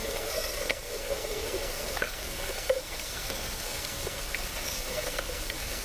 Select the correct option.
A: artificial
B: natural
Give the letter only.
A